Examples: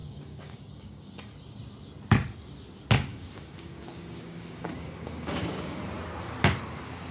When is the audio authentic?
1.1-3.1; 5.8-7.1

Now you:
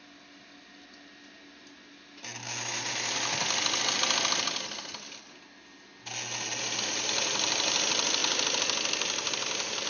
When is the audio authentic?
0.0-9.9

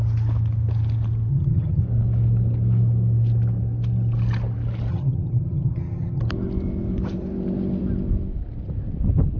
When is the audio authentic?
0.0-1.3; 1.8-4.9; 6.2-9.4

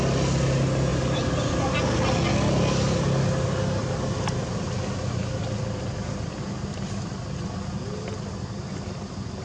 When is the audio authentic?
0.0-0.9; 1.8-9.4

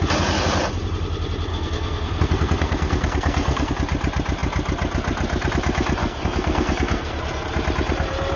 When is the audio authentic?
0.0-1.5; 3.7-6.0; 7.2-8.4

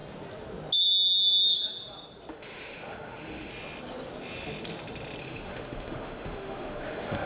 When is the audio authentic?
0.0-2.3; 3.5-5.2